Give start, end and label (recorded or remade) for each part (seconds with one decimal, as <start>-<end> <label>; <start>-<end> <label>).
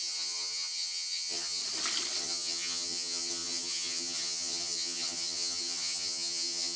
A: 0.0-1.6 remade; 1.6-2.2 recorded; 2.2-6.8 remade